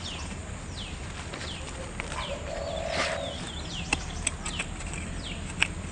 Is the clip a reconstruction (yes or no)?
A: no